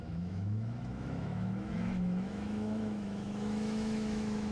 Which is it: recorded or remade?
remade